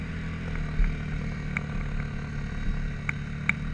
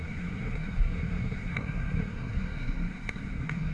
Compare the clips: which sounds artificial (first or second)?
second